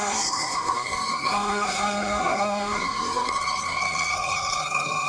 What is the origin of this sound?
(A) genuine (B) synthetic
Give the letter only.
B